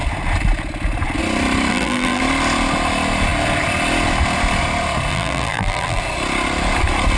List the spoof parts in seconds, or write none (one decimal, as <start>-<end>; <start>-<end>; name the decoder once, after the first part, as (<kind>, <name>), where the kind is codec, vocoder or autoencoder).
1.7-2.2 (vocoder, BigVGAN v2); 5.1-6.0